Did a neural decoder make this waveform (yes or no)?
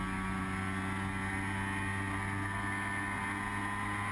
no